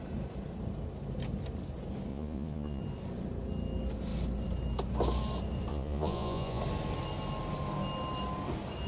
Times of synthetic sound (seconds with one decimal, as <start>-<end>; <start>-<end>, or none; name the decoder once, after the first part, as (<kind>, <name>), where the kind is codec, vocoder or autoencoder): 2.1-2.8 (vocoder, Vocos); 5.7-6.6